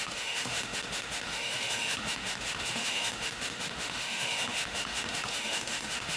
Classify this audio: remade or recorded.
remade